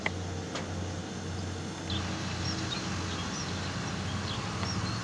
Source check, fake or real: real